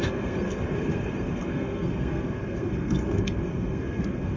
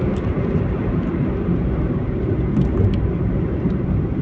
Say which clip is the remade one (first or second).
first